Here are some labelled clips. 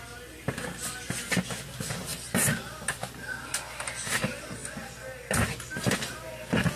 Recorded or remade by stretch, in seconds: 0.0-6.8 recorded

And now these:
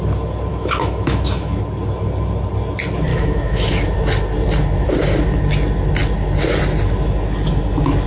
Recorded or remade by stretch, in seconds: 0.0-0.5 recorded; 0.5-1.6 remade; 1.6-3.1 recorded; 3.1-3.7 remade; 3.7-8.1 recorded

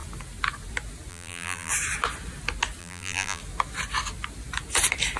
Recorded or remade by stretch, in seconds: 0.0-1.1 recorded; 1.1-1.7 remade; 1.7-2.8 recorded; 2.8-3.4 remade; 3.4-5.2 recorded